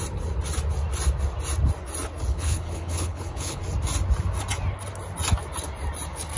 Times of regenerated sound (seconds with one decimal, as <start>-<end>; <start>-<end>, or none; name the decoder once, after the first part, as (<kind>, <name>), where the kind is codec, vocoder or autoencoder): 2.3-3.6 (codec, HILCodec)